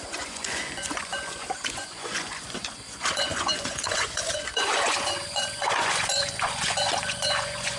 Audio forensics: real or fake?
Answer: fake